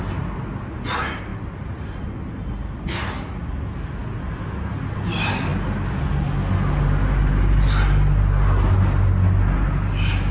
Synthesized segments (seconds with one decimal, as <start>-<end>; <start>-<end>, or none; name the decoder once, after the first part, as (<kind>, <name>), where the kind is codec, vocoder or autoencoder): none